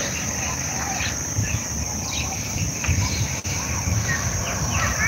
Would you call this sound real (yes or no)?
no